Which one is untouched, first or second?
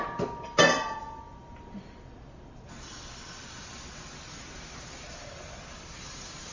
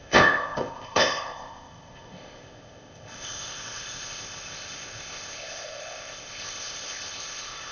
first